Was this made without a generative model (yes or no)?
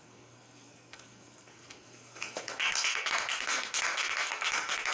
no